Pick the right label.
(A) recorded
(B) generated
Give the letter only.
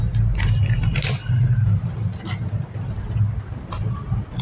A